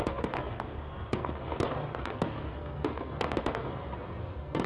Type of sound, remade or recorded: remade